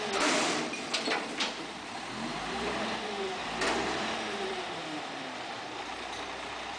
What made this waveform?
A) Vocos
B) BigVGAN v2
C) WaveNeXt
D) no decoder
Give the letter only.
B